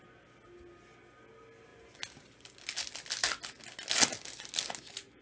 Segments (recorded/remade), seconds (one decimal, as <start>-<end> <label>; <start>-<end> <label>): 0.0-5.2 recorded